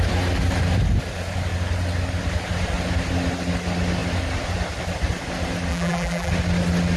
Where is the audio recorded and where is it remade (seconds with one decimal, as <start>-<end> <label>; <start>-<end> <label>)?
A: 0.0-5.7 recorded; 5.7-6.3 remade; 6.3-7.0 recorded